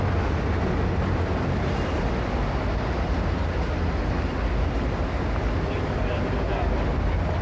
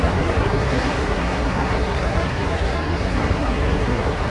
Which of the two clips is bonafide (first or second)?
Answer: first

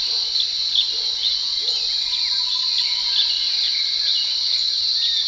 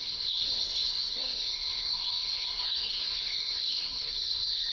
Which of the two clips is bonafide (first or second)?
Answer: first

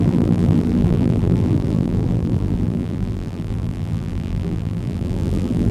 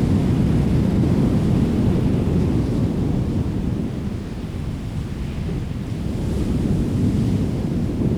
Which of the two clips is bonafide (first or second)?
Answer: second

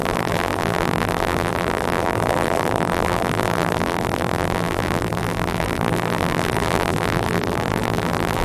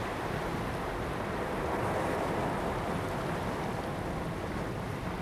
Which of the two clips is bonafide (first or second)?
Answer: second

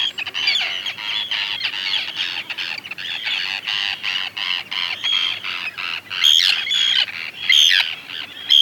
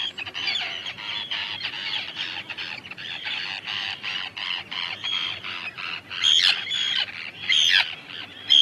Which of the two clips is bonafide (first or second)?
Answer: first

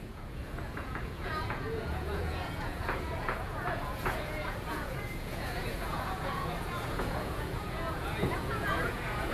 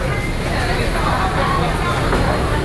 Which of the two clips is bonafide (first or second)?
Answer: second